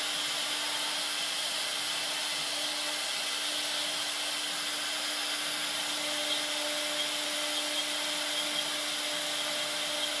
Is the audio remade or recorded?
recorded